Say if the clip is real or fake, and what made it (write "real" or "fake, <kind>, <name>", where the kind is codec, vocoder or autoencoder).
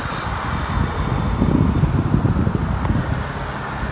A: real